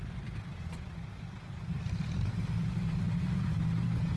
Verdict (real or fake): real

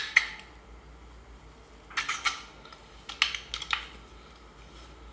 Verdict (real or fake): real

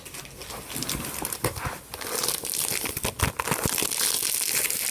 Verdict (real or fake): real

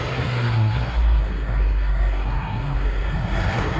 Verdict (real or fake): fake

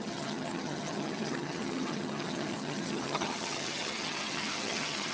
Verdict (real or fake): fake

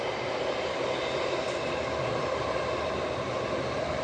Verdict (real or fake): real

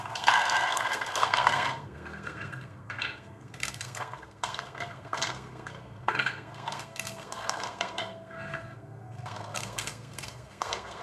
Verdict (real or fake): fake